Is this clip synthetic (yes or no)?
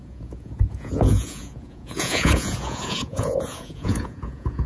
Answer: yes